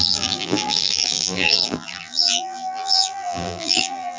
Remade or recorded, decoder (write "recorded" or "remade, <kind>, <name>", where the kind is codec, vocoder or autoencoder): remade, vocoder, BigVGAN v2